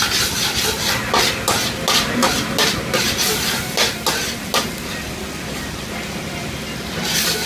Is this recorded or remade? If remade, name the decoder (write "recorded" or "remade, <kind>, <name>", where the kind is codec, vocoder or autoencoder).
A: recorded